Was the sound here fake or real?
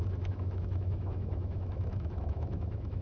fake